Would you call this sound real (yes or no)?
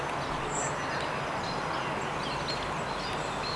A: yes